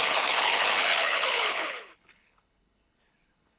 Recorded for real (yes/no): no